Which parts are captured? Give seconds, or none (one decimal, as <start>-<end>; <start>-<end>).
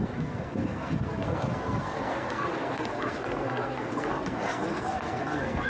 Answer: none